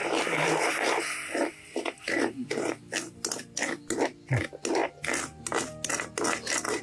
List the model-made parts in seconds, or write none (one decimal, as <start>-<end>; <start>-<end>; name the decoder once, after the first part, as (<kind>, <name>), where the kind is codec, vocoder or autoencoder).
none